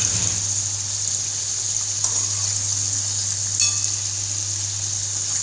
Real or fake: real